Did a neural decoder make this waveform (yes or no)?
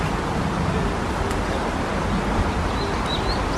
no